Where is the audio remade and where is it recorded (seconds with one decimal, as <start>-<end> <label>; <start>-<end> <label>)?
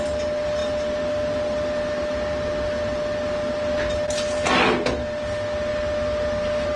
0.0-6.8 recorded